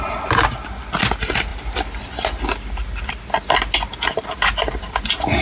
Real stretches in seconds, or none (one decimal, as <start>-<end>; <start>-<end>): 0.0-5.4